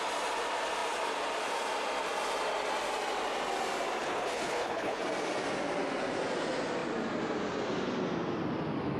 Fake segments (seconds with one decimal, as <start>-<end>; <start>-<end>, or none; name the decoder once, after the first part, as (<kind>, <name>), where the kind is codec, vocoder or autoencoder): 4.0-5.0 (codec, HILCodec)